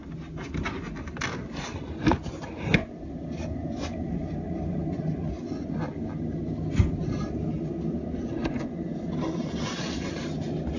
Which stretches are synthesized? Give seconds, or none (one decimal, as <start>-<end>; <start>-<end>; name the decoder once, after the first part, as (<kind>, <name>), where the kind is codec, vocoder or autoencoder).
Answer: none